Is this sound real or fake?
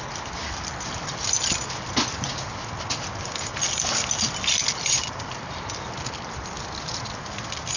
real